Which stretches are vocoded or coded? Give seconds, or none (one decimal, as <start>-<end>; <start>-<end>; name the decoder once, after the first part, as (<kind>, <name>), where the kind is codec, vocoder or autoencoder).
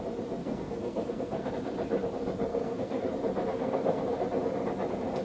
0.4-1.5 (codec, SNAC); 2.5-3.1; 3.5-4.0